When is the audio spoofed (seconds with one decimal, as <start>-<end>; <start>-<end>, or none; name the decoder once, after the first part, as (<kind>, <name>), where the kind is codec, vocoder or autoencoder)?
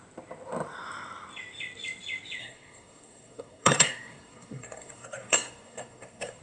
2.4-6.4 (codec, SNAC)